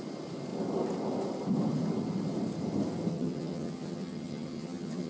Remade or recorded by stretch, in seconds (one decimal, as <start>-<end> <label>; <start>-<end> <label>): 0.0-3.1 recorded; 3.1-5.1 remade